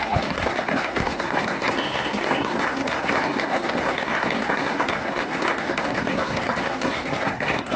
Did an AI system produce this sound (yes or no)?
yes